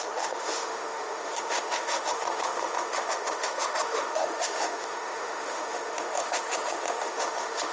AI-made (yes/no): yes